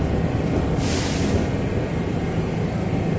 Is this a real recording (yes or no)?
yes